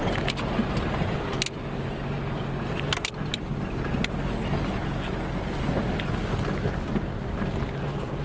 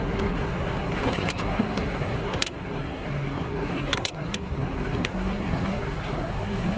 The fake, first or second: second